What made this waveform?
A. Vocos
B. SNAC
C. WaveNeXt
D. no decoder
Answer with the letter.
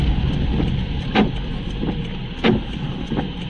D